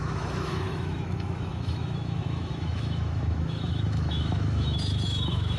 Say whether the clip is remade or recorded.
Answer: remade